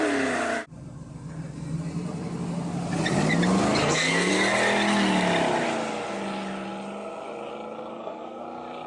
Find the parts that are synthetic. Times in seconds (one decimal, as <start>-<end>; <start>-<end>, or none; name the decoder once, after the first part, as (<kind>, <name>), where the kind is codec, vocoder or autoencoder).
3.8-4.3 (codec, SNAC); 7.9-8.4